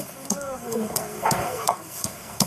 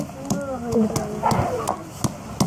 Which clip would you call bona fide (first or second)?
second